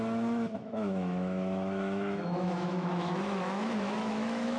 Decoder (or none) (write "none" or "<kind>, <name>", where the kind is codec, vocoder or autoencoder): autoencoder, DAC-VAE